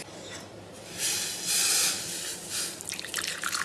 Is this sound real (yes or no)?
no